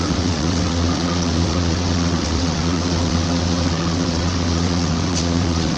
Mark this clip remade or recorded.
remade